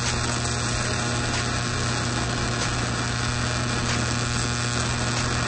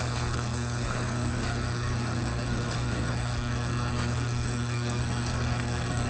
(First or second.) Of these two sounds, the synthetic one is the second